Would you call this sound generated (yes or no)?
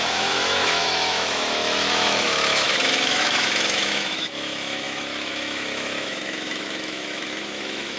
yes